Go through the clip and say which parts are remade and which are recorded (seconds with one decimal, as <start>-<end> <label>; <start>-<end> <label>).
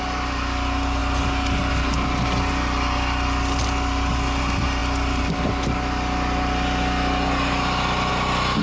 0.0-8.6 recorded